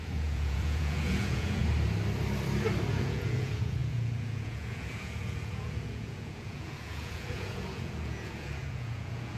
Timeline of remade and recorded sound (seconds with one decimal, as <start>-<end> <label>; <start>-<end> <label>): 0.0-1.6 remade; 1.6-2.9 recorded; 2.9-9.4 remade